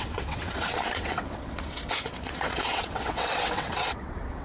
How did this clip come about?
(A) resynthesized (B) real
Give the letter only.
A